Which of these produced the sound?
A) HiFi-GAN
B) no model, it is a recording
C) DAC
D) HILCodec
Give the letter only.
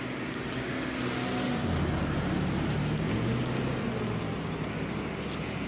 B